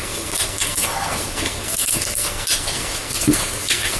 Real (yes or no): no